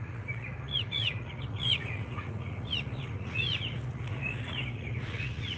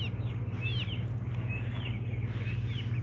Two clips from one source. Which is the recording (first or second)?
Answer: second